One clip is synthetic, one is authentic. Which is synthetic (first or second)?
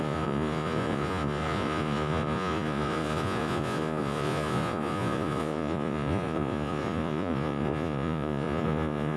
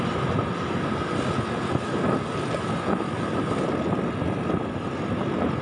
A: first